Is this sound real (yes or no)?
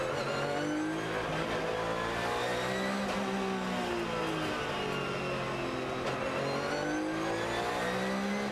yes